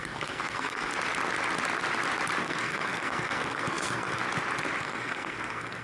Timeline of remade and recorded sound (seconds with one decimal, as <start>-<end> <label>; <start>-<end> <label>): 0.0-0.9 remade; 0.9-2.4 recorded; 2.4-4.2 remade; 4.2-4.8 recorded; 4.8-5.8 remade